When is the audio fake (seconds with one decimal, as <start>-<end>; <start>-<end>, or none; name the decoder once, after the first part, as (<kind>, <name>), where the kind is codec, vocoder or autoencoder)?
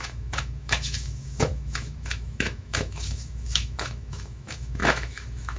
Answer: 0.0-5.6 (autoencoder, DAC-VAE)